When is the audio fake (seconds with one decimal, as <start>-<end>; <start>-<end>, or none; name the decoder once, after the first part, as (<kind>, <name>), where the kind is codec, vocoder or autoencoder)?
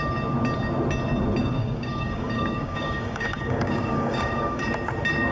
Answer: 1.4-4.6 (codec, DAC)